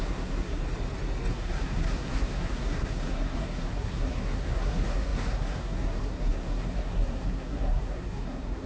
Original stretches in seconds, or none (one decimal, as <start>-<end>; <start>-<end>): 0.6-1.3

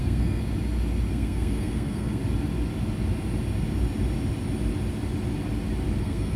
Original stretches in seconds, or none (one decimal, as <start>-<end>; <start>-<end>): 0.4-1.1; 2.2-6.0